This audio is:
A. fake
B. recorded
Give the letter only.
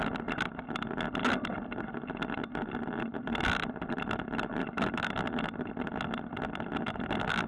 B